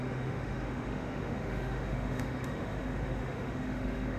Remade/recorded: remade